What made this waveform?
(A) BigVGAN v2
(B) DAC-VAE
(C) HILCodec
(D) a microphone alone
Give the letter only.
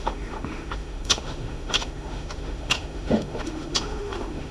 B